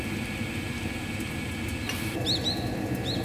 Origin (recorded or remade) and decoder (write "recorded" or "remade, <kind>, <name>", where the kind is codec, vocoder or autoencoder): recorded